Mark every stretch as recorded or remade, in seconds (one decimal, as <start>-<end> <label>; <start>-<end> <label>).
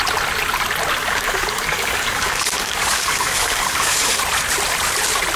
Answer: 0.0-1.0 recorded; 1.0-4.2 remade; 4.2-5.4 recorded